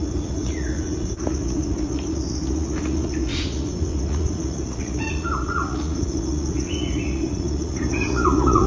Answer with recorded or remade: remade